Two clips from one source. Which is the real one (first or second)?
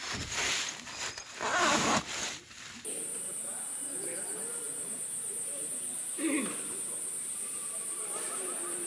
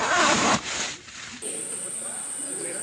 first